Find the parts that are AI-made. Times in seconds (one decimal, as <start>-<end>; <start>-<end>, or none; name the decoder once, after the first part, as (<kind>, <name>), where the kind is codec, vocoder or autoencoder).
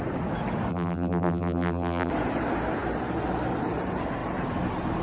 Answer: 0.7-2.1 (vocoder, BigVGAN v2)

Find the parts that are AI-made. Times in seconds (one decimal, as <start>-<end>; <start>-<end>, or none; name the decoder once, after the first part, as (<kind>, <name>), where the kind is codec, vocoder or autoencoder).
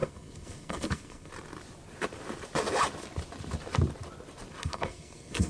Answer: 0.0-1.3 (codec, SNAC); 4.6-5.5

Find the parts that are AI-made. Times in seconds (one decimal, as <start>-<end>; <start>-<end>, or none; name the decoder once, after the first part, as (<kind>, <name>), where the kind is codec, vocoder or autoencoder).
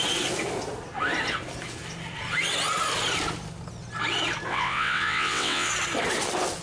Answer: 4.5-5.7 (vocoder, WaveNeXt)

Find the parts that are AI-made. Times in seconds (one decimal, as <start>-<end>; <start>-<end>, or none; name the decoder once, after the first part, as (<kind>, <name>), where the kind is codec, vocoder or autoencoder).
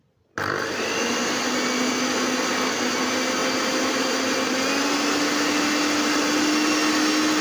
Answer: none